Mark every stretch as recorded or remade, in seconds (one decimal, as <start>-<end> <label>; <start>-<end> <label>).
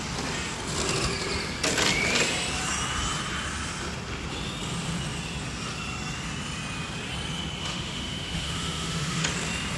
0.0-7.6 recorded; 7.6-9.2 remade; 9.2-9.8 recorded